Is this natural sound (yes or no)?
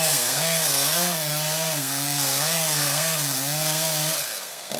no